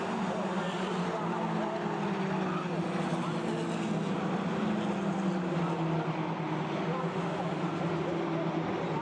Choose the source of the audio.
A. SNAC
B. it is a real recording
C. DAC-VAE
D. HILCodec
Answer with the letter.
B